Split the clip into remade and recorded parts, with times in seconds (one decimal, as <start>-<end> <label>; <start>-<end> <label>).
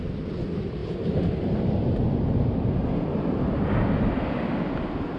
0.0-0.8 recorded; 0.8-3.9 remade; 3.9-5.2 recorded